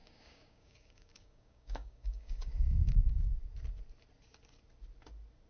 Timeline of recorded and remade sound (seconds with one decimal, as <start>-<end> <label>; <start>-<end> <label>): 0.0-3.3 remade; 3.3-5.5 recorded